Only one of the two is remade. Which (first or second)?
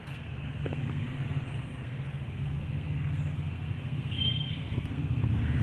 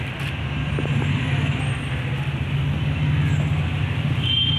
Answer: first